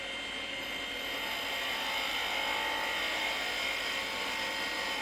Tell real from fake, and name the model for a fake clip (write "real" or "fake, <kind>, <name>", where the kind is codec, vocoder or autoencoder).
real